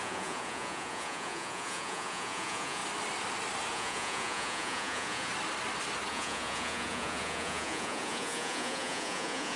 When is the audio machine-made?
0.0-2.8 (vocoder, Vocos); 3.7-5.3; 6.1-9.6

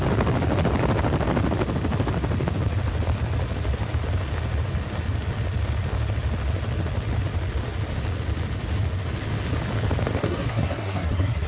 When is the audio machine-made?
10.2-11.5 (codec, SNAC)

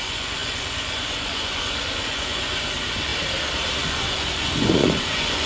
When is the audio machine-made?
0.0-3.1 (vocoder, Vocos); 3.8-5.5

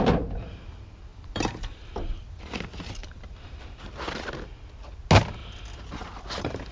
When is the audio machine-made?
1.1-2.5 (vocoder, BigVGAN v2); 3.0-3.6; 5.4-6.7

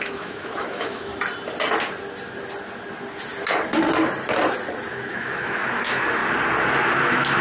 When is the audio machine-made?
0.0-1.1 (autoencoder, DAC-VAE); 4.9-6.2; 6.8-7.4

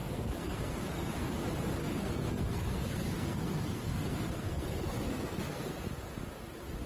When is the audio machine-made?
0.0-1.3 (codec, SNAC); 1.8-5.9

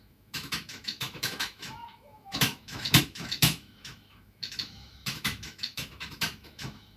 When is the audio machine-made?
0.0-7.0 (autoencoder, DAC-VAE)

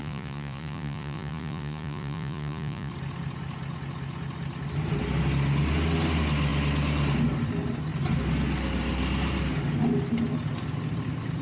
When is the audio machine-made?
0.0-2.9 (vocoder, Vocos)